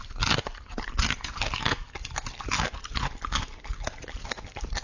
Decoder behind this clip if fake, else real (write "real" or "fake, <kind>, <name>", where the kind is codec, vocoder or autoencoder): real